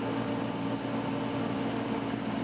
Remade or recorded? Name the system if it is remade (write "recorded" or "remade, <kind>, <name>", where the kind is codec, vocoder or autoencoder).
recorded